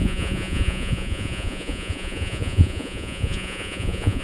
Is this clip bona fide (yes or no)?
no